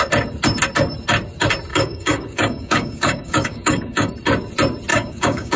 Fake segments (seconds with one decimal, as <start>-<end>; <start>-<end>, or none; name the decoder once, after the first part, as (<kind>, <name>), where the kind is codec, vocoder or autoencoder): 1.7-4.1 (codec, DAC); 4.9-5.6